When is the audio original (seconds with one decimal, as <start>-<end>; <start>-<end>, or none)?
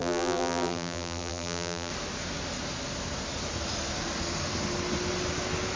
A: 1.9-5.8